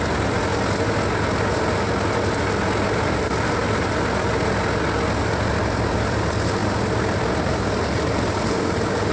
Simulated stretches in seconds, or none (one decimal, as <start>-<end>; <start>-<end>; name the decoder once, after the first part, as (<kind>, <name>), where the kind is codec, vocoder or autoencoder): 0.0-0.5 (vocoder, BigVGAN v2); 2.9-3.6; 5.5-9.1